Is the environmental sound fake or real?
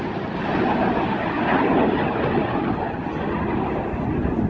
real